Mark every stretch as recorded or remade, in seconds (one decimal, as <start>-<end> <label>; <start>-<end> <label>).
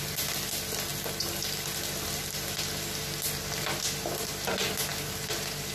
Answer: 0.0-5.7 recorded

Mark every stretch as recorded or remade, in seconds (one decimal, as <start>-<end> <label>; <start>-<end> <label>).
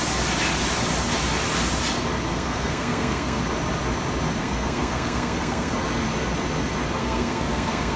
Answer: 0.0-2.3 recorded; 2.3-3.4 remade; 3.4-4.4 recorded; 4.4-5.7 remade; 5.7-7.0 recorded; 7.0-8.0 remade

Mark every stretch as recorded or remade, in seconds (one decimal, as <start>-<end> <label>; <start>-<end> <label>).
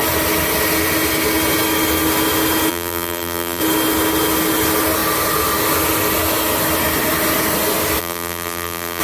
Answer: 0.0-2.7 recorded; 2.7-3.6 remade; 3.6-8.0 recorded; 8.0-9.0 remade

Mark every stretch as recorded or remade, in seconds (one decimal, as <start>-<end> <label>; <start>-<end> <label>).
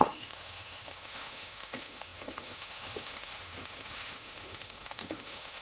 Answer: 0.0-5.6 remade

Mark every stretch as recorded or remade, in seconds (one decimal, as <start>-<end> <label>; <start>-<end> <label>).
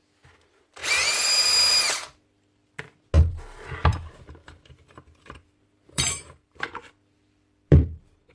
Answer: 0.0-0.8 recorded; 0.8-2.6 remade; 2.6-3.9 recorded; 3.9-8.3 remade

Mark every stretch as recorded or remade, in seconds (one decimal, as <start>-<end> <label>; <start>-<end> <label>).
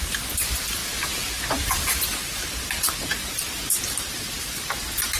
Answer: 0.0-5.2 remade